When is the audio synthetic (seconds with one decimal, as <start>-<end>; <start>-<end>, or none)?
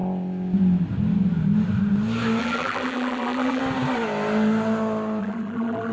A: 2.4-3.6; 5.2-5.9